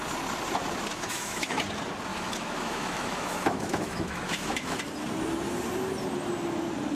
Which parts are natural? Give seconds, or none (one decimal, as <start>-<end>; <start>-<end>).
0.0-0.9; 1.6-2.1; 4.8-6.9